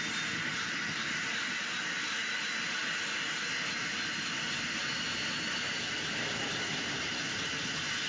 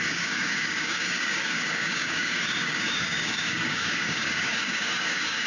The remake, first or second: second